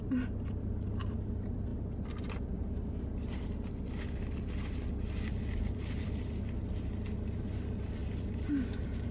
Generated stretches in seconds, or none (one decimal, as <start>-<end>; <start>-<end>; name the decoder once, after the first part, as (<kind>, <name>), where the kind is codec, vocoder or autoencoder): none